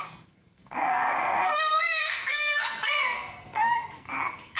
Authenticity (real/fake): fake